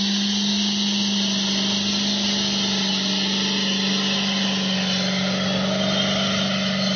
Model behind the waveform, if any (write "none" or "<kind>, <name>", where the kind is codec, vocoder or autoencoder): none